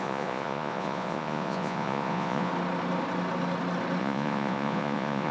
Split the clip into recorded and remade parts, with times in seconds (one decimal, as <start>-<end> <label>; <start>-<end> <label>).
0.0-2.5 remade; 2.5-4.0 recorded; 4.0-5.3 remade